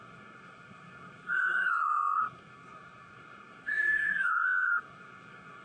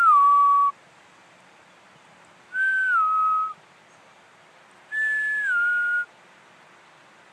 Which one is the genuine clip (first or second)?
second